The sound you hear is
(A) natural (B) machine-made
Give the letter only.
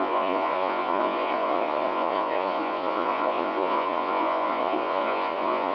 B